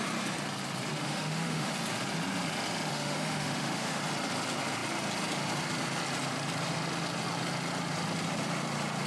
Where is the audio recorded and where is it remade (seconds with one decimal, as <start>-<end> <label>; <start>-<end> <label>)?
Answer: 0.0-1.0 recorded; 1.0-1.7 remade; 1.7-2.9 recorded; 2.9-4.0 remade; 4.0-9.1 recorded